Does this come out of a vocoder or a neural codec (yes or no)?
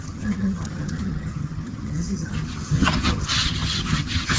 yes